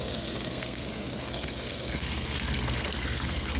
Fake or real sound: fake